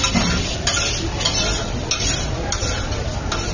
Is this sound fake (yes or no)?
no